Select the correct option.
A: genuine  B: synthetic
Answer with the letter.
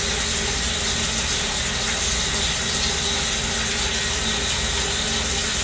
A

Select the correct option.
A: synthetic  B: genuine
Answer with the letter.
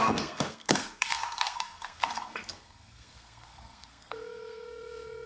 A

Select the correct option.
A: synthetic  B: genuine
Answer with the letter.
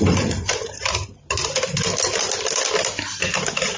B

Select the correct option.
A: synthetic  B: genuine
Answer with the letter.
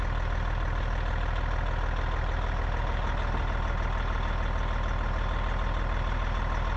A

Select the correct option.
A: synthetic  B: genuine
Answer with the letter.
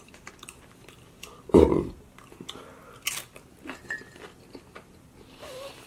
A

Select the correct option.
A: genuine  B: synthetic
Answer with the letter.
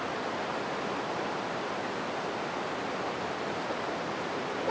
A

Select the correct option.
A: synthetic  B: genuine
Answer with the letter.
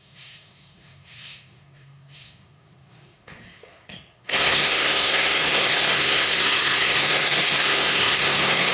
A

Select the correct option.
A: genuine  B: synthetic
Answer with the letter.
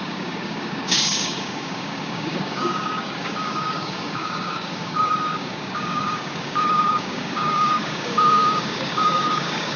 B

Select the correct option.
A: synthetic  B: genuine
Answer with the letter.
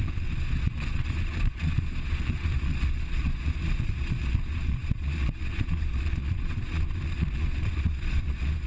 A